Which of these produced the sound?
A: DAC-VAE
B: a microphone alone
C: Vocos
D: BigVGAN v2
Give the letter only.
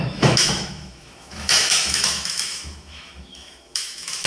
A